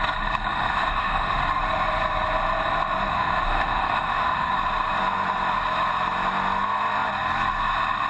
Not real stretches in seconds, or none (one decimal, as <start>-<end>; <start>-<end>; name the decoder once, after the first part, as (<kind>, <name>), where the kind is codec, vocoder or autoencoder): 0.5-1.4 (autoencoder, DAC-VAE); 3.1-4.5